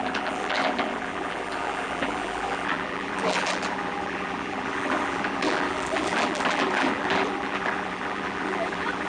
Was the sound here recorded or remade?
remade